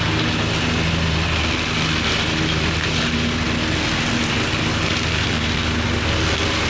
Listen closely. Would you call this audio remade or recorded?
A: recorded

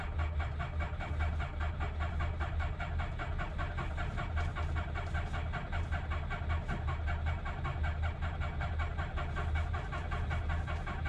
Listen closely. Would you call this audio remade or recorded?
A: recorded